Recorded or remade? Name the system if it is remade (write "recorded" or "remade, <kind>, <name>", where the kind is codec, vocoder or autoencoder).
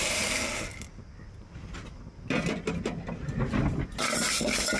recorded